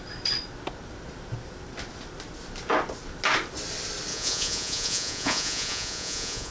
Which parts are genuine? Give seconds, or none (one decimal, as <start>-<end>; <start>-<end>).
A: 0.0-4.1